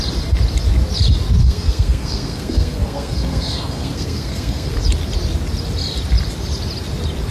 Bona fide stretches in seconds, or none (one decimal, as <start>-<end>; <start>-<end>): 0.0-1.4; 4.7-7.3